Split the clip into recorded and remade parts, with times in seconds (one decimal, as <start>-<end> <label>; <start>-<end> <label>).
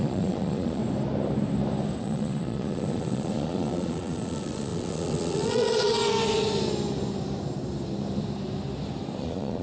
0.0-0.8 remade; 0.8-2.0 recorded; 2.0-6.0 remade; 6.0-9.2 recorded; 9.2-9.6 remade